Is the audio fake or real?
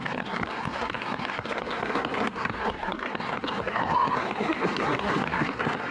fake